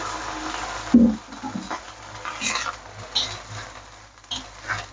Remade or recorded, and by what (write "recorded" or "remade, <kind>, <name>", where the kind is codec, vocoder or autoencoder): recorded